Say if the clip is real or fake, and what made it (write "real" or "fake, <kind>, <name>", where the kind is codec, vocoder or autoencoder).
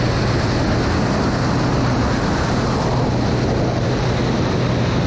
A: real